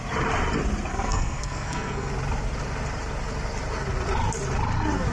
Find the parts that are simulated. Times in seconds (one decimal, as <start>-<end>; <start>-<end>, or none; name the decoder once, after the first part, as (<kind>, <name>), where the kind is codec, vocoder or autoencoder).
0.9-2.1 (codec, SNAC)